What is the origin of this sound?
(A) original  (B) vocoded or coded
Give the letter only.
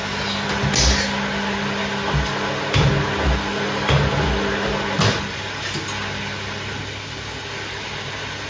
A